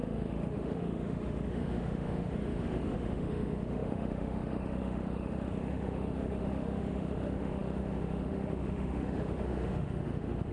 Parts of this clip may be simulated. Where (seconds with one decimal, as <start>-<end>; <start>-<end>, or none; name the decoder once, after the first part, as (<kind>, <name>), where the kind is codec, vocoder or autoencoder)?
0.0-10.5 (autoencoder, DAC-VAE)